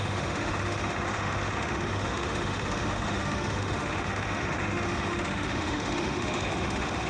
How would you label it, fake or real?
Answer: fake